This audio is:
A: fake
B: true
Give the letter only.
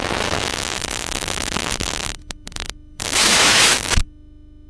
A